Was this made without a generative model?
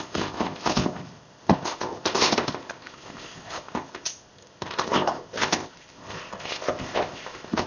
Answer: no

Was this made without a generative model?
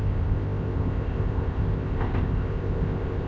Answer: no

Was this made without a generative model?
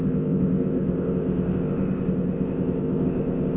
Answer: no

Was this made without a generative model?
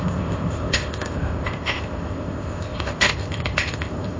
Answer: no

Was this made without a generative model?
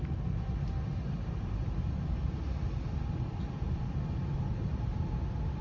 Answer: yes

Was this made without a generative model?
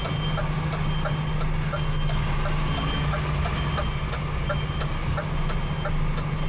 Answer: yes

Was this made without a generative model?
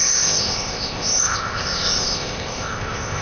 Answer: no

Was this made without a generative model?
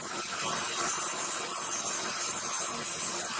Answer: yes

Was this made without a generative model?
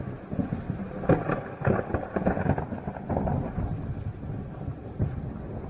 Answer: yes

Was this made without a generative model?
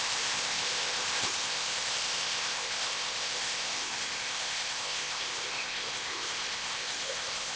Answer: no